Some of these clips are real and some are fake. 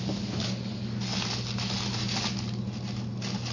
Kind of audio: real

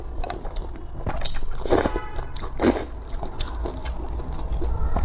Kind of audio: real